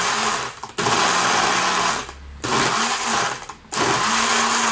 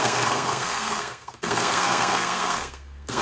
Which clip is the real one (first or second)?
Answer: first